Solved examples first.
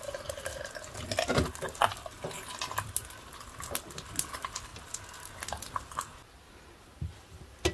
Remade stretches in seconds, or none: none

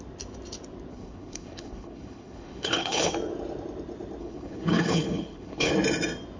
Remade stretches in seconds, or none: 0.9-3.1 (codec, HILCodec); 4.2-5.7

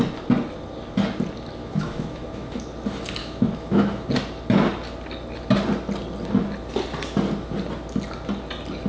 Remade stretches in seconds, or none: 1.6-2.6 (autoencoder, DAC-VAE); 3.2-4.1